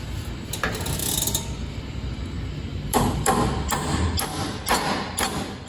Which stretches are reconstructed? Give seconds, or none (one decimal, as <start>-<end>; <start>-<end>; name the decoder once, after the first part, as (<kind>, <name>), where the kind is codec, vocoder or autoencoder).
2.7-3.3 (vocoder, BigVGAN v2)